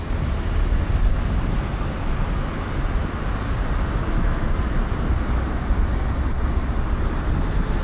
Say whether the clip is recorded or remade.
recorded